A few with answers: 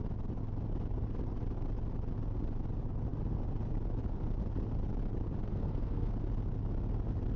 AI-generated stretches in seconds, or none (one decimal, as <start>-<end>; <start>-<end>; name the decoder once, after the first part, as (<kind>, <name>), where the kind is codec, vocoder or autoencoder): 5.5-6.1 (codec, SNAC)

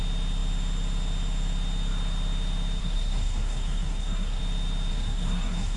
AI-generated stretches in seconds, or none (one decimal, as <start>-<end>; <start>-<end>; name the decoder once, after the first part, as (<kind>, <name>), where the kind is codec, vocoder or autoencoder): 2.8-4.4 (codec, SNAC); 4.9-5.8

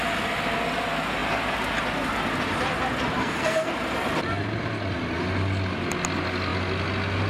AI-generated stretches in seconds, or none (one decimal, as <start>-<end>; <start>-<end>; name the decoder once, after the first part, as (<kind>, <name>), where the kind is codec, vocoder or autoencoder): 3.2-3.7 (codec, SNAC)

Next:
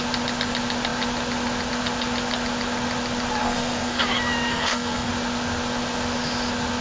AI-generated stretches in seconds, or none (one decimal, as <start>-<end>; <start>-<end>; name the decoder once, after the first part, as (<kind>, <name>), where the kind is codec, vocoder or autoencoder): 3.4-4.0 (codec, SNAC); 4.5-5.1

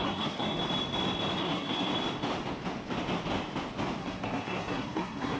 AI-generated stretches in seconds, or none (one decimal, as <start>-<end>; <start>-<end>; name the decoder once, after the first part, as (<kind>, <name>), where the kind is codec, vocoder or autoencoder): 0.0-0.6 (codec, SNAC); 1.4-1.9; 4.0-5.4